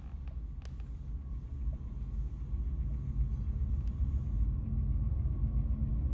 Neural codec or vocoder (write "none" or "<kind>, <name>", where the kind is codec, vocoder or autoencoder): none